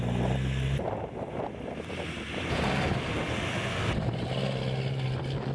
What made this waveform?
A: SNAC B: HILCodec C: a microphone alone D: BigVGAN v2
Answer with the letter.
C